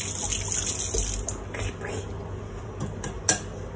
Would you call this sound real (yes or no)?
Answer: yes